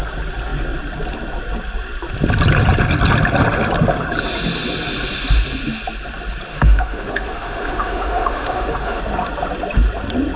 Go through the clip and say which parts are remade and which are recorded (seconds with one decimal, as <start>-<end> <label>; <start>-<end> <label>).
0.0-6.5 recorded; 6.5-9.0 remade; 9.0-10.4 recorded